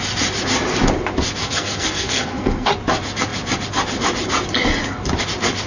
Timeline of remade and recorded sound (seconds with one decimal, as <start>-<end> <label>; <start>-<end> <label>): 0.0-1.4 recorded; 1.4-2.7 remade; 2.7-5.7 recorded